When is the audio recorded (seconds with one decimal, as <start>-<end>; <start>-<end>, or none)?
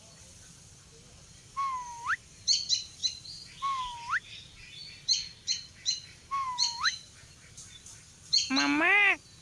0.0-5.4; 7.2-9.4